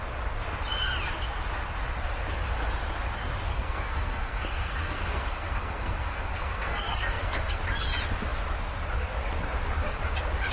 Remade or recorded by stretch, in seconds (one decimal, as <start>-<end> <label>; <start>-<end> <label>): 0.0-3.5 recorded; 3.5-7.6 remade; 7.6-10.5 recorded